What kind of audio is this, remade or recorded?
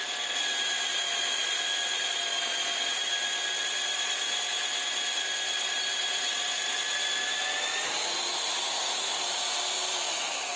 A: recorded